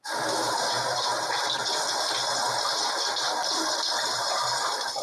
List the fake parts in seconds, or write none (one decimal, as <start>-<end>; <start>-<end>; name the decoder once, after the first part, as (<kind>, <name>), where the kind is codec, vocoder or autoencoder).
0.0-1.1 (vocoder, BigVGAN v2); 4.1-5.0